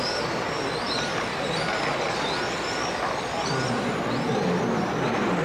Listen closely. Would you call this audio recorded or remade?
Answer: recorded